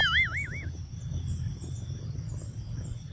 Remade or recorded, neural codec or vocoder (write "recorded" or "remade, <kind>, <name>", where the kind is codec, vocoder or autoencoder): recorded